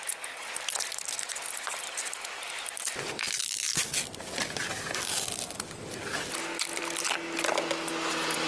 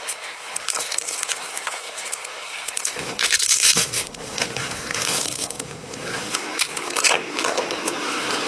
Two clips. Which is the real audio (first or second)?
first